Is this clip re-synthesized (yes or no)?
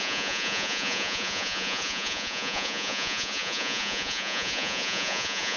yes